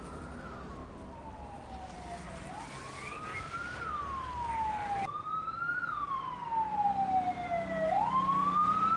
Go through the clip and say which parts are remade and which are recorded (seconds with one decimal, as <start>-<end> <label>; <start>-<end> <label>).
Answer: 0.0-9.0 recorded